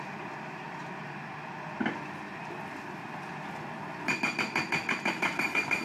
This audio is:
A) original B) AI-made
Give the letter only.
A